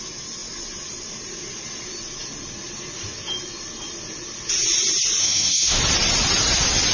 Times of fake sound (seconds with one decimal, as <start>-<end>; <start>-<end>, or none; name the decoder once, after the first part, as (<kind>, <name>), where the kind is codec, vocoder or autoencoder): 5.2-5.8 (autoencoder, DAC-VAE)